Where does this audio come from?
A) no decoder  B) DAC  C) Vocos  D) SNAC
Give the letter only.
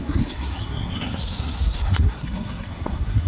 D